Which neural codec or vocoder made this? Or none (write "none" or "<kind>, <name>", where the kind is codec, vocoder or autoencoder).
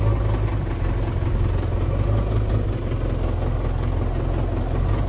none